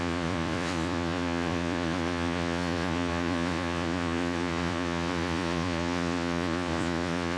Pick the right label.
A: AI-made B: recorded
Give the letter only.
A